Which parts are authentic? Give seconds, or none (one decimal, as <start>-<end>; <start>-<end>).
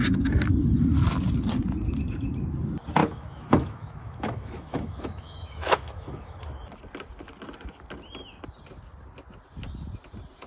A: 0.0-3.0; 6.4-10.5